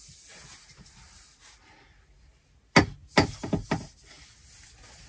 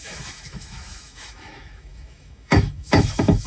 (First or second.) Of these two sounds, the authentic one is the first